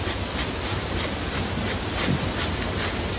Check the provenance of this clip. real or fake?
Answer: real